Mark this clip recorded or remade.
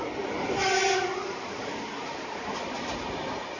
recorded